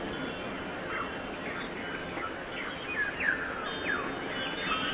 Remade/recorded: recorded